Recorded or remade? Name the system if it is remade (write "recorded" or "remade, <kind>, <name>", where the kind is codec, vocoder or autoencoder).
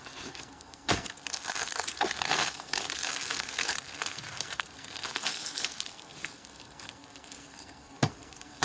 remade, codec, SNAC